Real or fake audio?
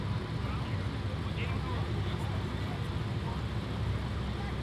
real